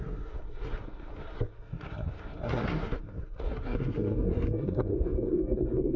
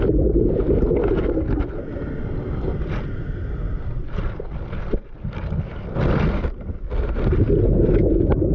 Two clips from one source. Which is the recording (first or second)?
second